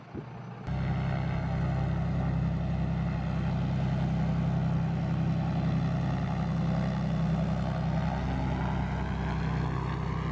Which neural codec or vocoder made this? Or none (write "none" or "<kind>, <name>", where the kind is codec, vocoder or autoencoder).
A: none